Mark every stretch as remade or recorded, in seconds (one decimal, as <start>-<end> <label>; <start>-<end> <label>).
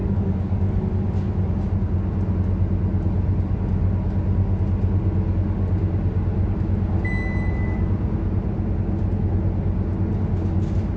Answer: 0.0-0.9 remade; 0.9-11.0 recorded